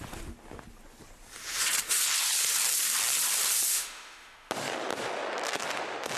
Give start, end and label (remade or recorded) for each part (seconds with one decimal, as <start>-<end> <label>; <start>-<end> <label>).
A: 0.0-3.7 recorded; 3.7-4.5 remade; 4.5-6.2 recorded